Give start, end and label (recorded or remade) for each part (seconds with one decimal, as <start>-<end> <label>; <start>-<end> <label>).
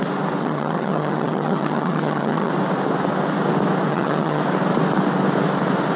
0.0-0.4 recorded; 0.4-2.5 remade; 2.5-3.9 recorded; 3.9-4.4 remade; 4.4-6.0 recorded